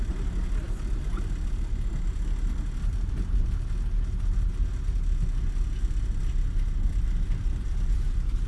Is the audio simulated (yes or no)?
no